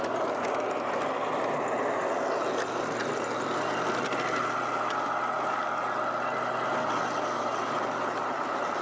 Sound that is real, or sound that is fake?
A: real